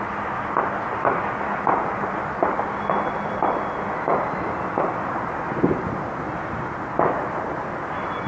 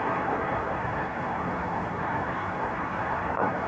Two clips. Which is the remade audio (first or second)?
second